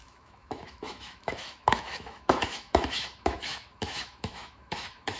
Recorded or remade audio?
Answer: remade